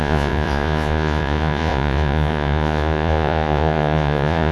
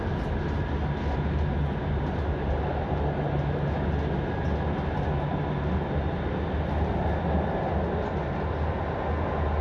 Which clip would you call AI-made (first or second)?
first